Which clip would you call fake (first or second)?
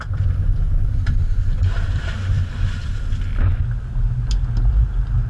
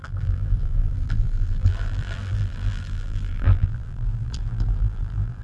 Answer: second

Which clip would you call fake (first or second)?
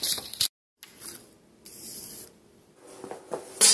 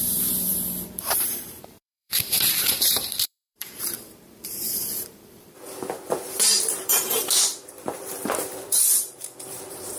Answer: second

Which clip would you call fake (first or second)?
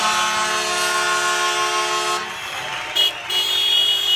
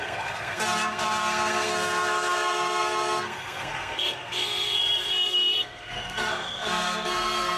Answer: second